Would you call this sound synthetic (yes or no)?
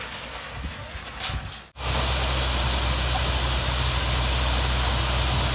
no